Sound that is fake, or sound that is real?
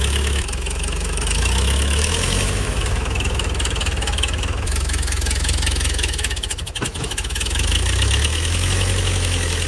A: fake